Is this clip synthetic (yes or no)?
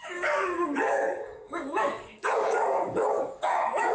yes